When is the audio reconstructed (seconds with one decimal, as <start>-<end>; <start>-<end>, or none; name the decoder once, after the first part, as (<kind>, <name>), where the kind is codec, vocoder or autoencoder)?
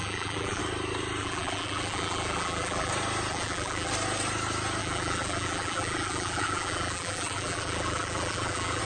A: 0.0-0.6 (vocoder, BigVGAN v2); 1.2-2.9; 3.3-3.9; 4.8-8.8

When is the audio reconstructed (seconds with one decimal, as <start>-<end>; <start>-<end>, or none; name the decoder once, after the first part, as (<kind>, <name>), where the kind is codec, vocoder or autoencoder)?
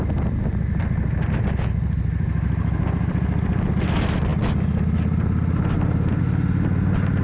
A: none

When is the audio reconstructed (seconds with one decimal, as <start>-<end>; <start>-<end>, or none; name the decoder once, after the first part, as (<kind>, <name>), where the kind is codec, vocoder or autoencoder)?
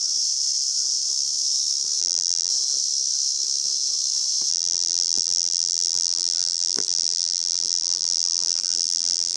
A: 2.0-2.5 (vocoder, BigVGAN v2); 4.5-9.4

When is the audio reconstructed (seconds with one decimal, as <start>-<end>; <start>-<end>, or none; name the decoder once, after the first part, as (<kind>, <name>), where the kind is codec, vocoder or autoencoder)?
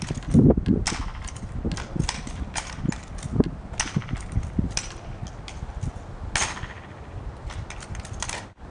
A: none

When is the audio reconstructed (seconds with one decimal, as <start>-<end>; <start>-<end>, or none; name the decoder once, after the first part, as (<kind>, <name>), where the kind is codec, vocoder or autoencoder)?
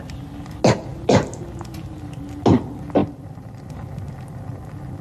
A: 3.0-3.7 (vocoder, BigVGAN v2)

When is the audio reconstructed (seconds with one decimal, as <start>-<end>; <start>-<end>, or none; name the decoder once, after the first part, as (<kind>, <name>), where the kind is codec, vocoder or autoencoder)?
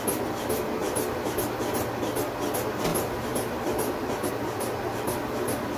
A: 2.9-4.3 (vocoder, BigVGAN v2)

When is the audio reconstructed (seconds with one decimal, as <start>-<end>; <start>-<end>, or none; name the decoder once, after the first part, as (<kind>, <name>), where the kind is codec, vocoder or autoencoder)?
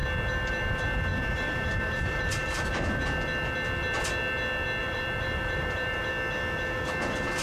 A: 1.1-2.7 (vocoder, BigVGAN v2); 4.8-6.1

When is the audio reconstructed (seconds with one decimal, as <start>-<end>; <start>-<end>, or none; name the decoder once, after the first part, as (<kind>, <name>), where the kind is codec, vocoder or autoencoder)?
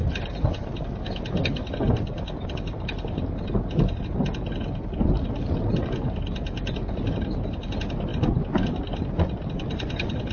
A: none